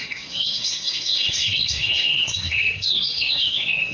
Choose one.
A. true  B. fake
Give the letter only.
B